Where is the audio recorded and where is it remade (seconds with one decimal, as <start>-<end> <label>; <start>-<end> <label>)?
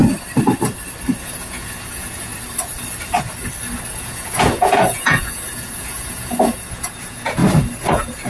0.0-1.2 recorded; 1.2-2.3 remade; 2.3-4.0 recorded; 4.0-7.4 remade; 7.4-7.9 recorded; 7.9-8.3 remade